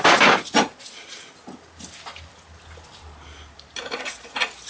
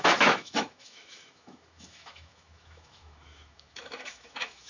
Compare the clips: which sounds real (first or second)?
first